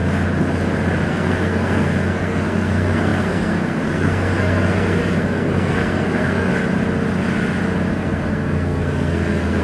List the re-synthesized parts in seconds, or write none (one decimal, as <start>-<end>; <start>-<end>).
1.1-6.5; 7.9-9.6